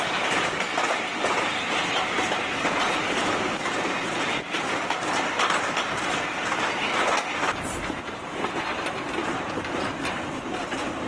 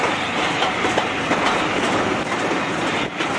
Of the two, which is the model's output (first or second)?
second